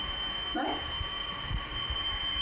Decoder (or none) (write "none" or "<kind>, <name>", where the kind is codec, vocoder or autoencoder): none